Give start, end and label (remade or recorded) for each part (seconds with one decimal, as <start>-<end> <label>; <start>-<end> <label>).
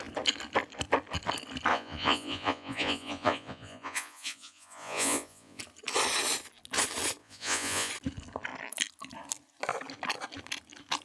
0.0-1.7 recorded; 1.7-5.6 remade; 5.6-7.2 recorded; 7.2-7.9 remade; 7.9-11.0 recorded